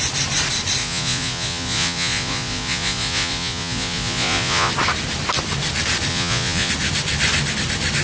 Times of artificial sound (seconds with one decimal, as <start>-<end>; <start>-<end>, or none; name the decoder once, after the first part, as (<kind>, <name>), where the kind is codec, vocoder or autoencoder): 0.8-4.7 (vocoder, Vocos); 6.1-6.7

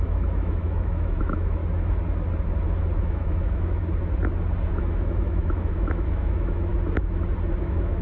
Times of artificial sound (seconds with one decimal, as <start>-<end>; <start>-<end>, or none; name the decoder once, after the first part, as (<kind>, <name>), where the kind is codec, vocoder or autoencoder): 0.0-1.6 (autoencoder, DAC-VAE); 3.0-3.8; 4.8-6.7; 7.6-8.0

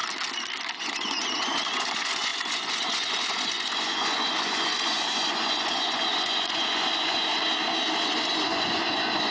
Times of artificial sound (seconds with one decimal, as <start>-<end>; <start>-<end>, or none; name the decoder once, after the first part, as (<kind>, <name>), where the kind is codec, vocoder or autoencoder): 0.8-7.3 (vocoder, Vocos); 8.0-9.3

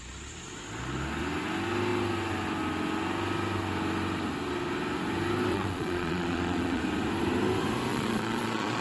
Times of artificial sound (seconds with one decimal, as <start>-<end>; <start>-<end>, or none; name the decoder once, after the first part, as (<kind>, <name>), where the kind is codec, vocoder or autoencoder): 5.5-6.8 (vocoder, Vocos); 7.9-8.8

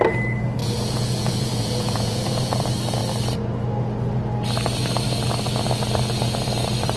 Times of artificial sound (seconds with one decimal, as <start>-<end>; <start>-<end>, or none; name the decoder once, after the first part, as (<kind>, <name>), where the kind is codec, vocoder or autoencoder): 0.6-2.6 (vocoder, Vocos)

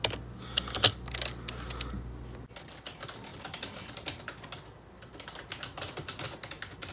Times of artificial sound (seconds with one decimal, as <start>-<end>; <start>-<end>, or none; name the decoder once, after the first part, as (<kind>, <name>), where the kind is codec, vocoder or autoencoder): none

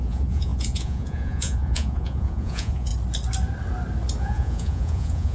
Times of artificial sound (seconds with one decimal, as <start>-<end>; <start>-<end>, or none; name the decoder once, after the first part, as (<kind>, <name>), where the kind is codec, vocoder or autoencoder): 0.0-2.9 (vocoder, Vocos); 4.2-5.3

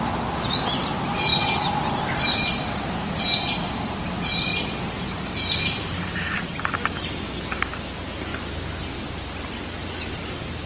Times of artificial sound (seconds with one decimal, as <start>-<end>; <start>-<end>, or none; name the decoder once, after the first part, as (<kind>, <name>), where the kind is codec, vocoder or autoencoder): 4.5-6.6 (vocoder, BigVGAN v2)